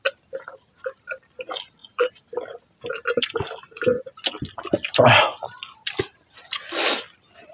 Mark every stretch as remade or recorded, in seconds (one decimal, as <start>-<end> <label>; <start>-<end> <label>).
0.0-1.8 recorded; 1.8-2.3 remade; 2.3-7.5 recorded